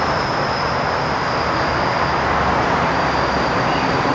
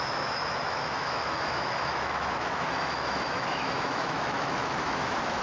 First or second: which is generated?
second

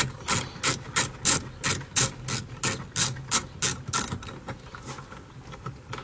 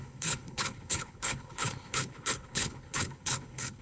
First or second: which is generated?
second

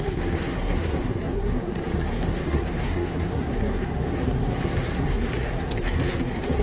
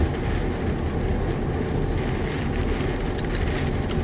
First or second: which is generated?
first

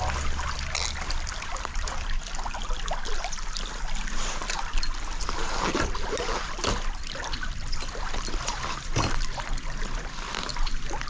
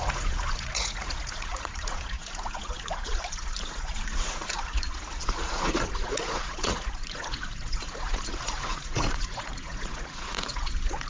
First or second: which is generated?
second